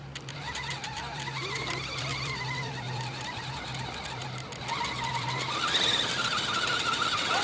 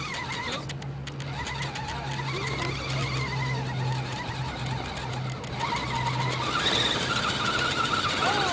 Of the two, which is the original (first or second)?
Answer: second